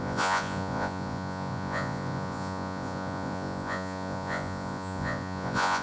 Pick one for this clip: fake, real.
fake